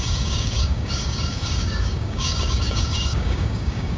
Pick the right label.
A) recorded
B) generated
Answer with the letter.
B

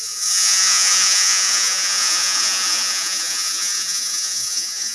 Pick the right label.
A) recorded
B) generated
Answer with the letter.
B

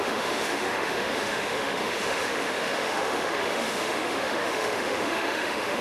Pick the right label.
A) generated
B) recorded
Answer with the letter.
A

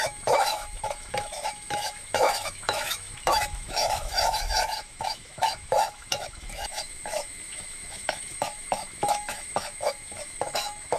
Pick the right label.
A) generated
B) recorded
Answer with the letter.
A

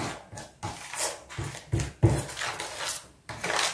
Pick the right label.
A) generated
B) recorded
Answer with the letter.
B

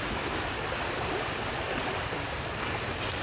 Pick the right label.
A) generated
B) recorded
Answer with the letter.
B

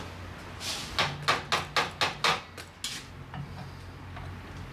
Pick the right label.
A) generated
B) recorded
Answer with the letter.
B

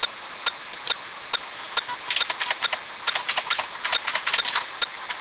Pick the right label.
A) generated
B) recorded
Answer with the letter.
B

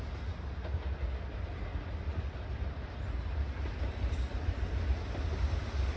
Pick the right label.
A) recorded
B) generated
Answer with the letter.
A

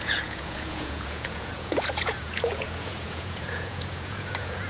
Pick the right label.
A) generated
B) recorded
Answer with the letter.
A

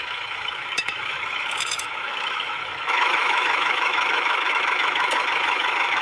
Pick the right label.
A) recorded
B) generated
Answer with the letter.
B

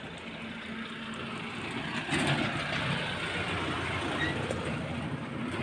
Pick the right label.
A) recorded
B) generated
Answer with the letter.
A